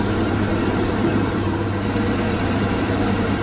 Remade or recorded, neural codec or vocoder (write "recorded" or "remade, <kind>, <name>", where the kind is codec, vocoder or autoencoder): remade, vocoder, BigVGAN v2